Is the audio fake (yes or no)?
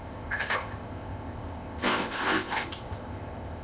yes